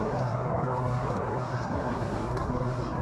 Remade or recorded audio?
remade